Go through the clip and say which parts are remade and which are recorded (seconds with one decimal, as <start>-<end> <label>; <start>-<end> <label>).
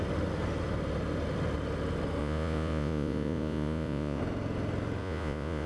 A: 0.0-2.2 recorded; 2.2-4.2 remade; 4.2-5.0 recorded; 5.0-5.7 remade